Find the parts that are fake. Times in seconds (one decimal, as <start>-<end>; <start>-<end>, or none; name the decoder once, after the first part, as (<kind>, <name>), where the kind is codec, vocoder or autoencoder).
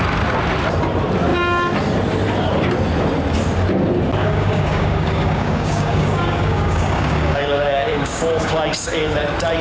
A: 4.2-9.2 (codec, DAC)